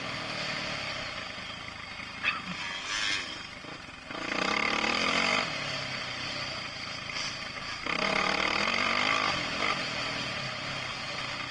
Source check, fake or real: real